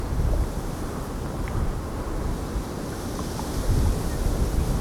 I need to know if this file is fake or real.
real